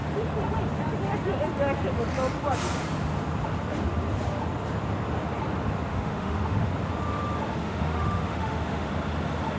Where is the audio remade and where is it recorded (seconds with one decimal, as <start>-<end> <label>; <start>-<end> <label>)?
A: 0.0-5.9 recorded; 5.9-6.7 remade; 6.7-7.6 recorded; 7.6-8.9 remade; 8.9-9.6 recorded

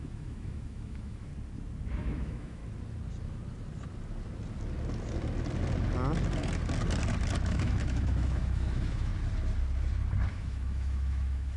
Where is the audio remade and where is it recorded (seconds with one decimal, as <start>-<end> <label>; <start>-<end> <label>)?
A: 0.0-1.3 remade; 1.3-2.0 recorded; 2.0-2.6 remade; 2.6-7.5 recorded; 7.5-9.1 remade; 9.1-10.3 recorded; 10.3-11.6 remade

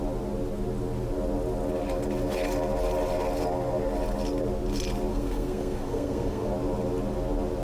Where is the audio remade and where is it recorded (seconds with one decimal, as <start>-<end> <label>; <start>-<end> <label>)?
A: 0.0-5.1 recorded; 5.1-6.5 remade; 6.5-7.6 recorded